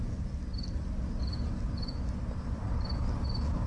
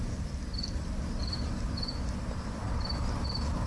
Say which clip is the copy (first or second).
second